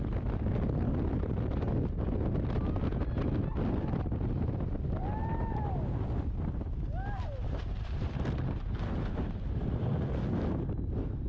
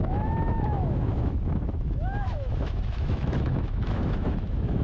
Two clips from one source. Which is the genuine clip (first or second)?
first